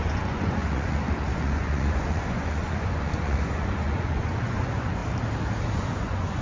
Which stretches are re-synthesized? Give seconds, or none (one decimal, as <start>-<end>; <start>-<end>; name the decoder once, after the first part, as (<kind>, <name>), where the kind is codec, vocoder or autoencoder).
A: 0.0-5.0 (vocoder, Vocos); 5.6-6.4